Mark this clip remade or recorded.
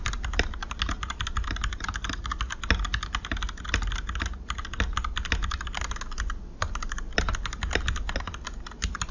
recorded